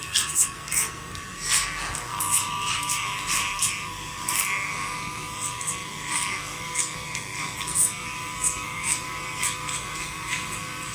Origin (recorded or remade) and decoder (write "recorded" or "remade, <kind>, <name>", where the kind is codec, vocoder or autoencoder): remade, codec, SNAC